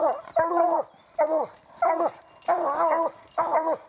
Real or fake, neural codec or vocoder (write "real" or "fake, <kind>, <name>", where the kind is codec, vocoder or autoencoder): real